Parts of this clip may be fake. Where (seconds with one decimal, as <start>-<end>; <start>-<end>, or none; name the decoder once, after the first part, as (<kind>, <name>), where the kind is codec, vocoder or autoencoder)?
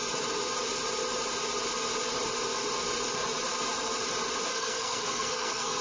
4.5-5.8 (codec, SNAC)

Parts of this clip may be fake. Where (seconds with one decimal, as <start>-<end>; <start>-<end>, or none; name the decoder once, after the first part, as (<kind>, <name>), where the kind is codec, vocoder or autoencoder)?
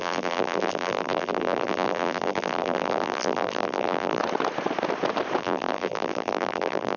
0.0-4.2 (vocoder, BigVGAN v2); 5.4-7.0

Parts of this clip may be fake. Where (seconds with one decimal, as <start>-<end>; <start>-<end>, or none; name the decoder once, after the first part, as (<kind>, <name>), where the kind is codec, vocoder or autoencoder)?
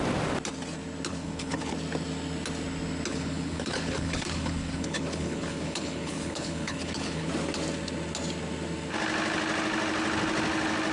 1.1-1.7 (codec, HILCodec); 3.1-7.3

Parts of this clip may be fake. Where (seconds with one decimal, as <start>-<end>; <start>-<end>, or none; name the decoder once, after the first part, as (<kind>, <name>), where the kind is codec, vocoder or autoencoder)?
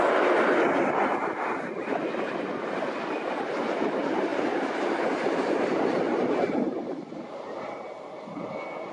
none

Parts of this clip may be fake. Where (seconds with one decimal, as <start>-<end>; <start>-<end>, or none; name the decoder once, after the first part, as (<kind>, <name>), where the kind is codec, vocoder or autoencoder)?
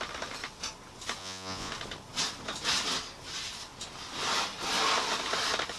1.2-1.7 (vocoder, Vocos)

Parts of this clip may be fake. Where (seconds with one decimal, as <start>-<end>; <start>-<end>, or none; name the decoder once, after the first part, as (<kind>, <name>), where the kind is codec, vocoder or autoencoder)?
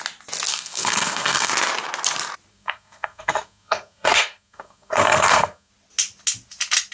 0.5-1.5 (codec, SNAC); 2.5-5.7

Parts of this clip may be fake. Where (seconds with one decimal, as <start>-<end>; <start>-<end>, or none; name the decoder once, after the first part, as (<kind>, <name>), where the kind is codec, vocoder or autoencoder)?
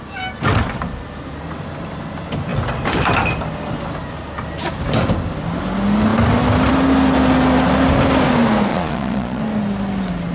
8.7-9.4 (vocoder, Vocos)